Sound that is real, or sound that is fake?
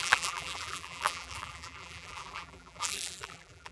fake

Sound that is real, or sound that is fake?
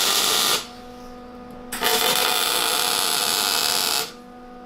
real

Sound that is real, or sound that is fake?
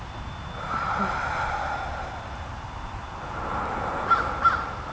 real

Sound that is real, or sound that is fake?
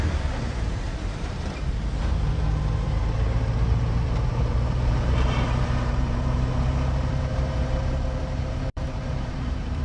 fake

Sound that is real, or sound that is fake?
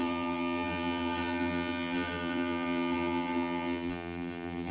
fake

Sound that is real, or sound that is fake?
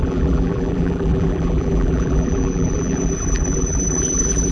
fake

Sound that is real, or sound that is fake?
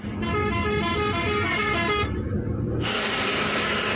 real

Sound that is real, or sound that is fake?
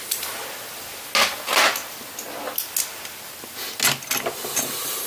real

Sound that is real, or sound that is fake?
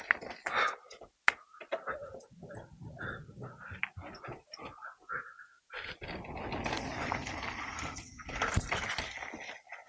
real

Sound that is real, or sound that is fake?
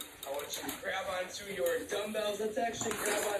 fake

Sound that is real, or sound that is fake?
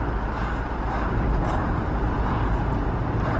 real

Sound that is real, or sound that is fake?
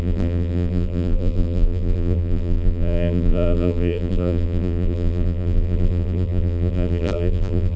fake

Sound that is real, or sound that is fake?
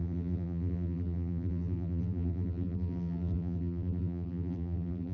fake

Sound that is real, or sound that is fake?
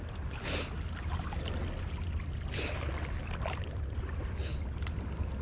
real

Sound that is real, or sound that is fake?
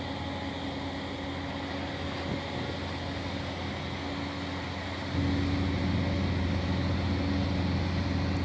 real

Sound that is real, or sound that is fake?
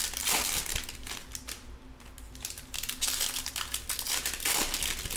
real